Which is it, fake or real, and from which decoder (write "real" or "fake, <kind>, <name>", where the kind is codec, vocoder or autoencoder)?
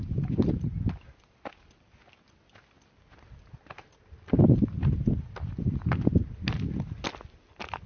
real